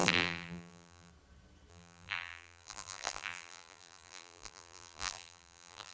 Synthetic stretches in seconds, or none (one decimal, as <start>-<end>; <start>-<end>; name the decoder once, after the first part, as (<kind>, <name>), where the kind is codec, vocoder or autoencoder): 0.0-1.1 (vocoder, BigVGAN v2); 1.7-5.9